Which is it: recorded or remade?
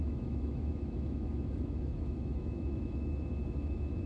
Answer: remade